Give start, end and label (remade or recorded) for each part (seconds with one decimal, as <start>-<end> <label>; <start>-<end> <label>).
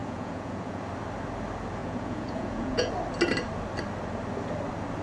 0.0-0.8 remade; 0.8-1.8 recorded; 1.8-2.9 remade; 2.9-5.0 recorded